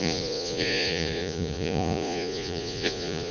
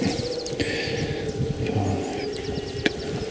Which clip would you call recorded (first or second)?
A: second